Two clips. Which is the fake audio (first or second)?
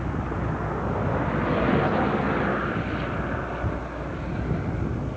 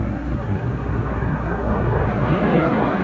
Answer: second